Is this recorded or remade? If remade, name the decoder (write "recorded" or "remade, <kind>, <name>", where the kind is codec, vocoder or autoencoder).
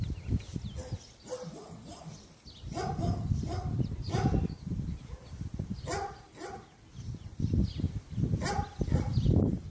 recorded